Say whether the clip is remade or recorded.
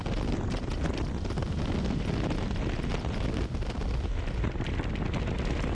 recorded